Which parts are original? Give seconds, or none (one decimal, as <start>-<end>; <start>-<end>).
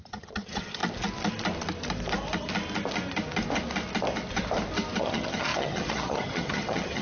0.8-5.0